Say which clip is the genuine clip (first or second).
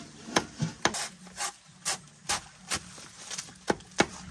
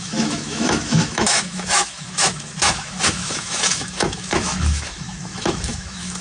first